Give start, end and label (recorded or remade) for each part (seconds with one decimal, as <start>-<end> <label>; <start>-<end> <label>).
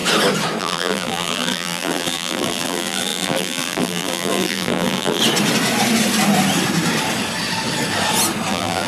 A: 0.0-0.6 recorded; 0.6-5.2 remade; 5.2-8.5 recorded; 8.5-8.9 remade